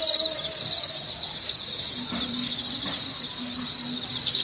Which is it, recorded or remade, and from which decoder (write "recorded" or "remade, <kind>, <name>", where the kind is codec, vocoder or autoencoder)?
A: recorded